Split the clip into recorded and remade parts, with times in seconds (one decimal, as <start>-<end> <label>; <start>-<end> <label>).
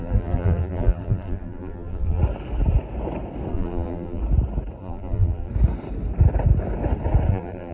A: 0.0-2.2 remade; 2.2-3.5 recorded; 3.5-4.2 remade; 4.2-4.8 recorded; 4.8-5.5 remade; 5.5-7.3 recorded; 7.3-7.7 remade